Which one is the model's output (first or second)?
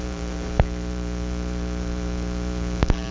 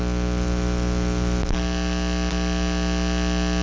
first